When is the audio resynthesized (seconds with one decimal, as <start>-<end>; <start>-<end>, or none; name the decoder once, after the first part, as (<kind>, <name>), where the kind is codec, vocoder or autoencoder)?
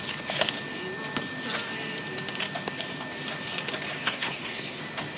4.0-4.8 (codec, SNAC)